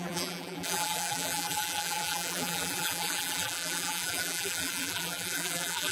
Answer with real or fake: fake